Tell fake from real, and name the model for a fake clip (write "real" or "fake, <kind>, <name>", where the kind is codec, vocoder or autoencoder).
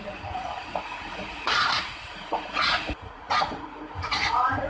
fake, vocoder, Vocos